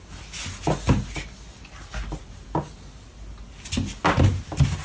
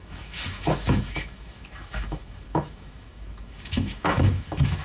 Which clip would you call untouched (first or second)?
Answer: first